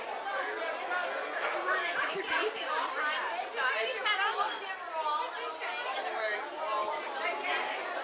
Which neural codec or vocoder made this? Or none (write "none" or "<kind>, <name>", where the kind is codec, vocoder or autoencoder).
none